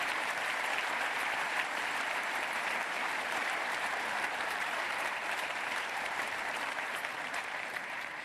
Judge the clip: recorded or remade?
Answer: remade